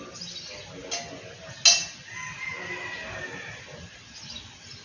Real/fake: real